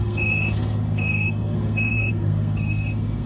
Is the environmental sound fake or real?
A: fake